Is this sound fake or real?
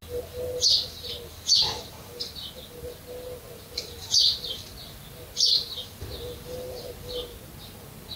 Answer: real